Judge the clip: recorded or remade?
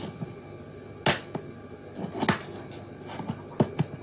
recorded